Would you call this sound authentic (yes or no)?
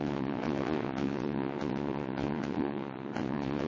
no